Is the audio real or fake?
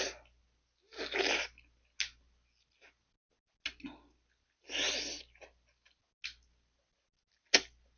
real